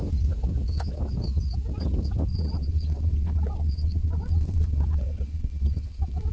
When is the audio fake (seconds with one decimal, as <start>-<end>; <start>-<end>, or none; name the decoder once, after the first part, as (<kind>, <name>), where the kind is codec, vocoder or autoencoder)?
2.3-6.3 (vocoder, WaveNeXt)